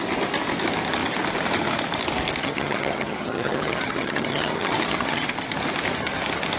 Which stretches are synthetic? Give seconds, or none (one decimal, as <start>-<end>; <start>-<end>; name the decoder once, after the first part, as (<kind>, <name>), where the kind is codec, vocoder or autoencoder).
2.4-5.3 (vocoder, HiFi-GAN)